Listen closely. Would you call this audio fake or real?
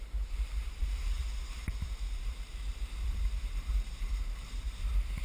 fake